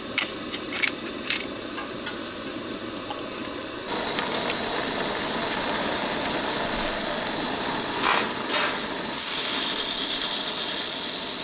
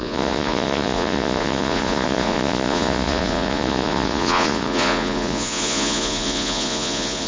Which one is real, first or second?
first